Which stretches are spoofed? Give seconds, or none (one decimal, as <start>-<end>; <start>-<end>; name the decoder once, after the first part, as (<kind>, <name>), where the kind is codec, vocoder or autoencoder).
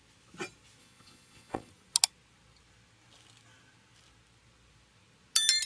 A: 0.8-1.7 (vocoder, Vocos)